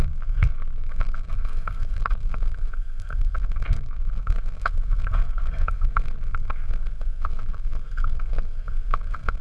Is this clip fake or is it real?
fake